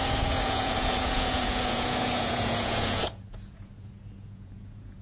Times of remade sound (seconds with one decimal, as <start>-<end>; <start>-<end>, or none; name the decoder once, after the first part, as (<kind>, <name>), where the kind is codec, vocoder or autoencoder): 0.0-5.0 (vocoder, Vocos)